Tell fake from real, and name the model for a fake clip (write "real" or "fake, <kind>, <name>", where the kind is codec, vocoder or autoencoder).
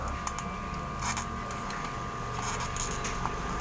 real